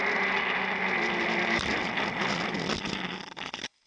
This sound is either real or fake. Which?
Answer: real